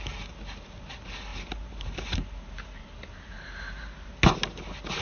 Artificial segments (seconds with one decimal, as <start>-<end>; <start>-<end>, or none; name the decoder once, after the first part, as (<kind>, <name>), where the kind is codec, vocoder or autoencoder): 1.3-4.1 (vocoder, BigVGAN v2)